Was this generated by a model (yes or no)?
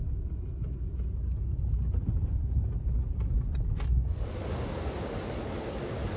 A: no